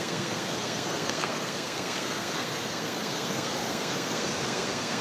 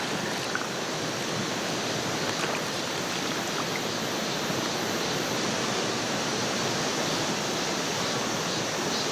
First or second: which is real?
second